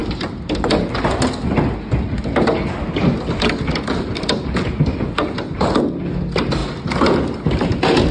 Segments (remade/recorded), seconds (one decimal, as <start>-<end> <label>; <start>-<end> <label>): 0.0-8.1 recorded